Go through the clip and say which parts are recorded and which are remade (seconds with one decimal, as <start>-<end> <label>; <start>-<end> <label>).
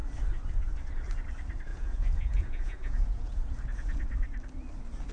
0.0-1.7 recorded; 1.7-3.5 remade; 3.5-5.1 recorded